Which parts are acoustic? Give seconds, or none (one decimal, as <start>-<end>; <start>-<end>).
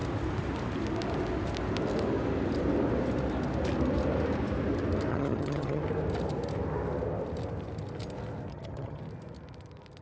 0.0-5.1; 5.8-8.5; 9.0-10.0